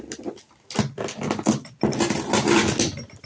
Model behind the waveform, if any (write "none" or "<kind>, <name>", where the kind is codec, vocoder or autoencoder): none